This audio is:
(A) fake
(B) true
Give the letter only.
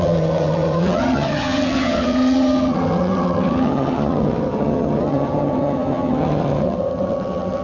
A